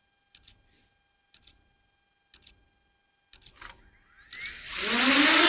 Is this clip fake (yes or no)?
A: no